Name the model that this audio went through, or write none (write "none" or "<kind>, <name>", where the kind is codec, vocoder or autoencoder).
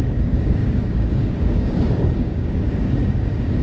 codec, DAC